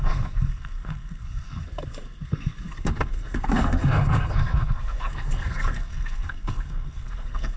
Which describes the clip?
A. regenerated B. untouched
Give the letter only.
A